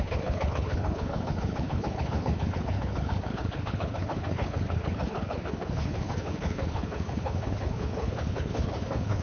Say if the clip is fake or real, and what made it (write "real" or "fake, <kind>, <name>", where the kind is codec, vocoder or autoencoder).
fake, codec, HILCodec